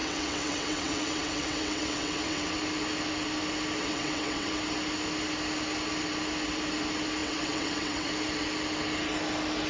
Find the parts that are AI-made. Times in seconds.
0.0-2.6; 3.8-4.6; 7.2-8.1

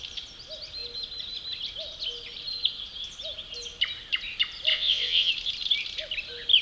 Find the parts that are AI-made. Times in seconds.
4.7-5.3